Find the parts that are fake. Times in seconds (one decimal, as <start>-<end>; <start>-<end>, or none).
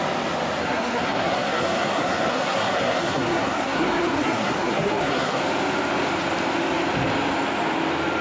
0.6-5.4